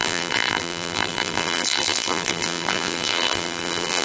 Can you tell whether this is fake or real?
fake